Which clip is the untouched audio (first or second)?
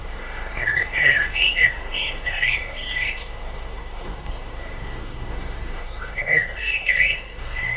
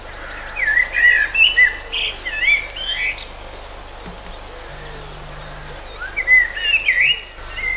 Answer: second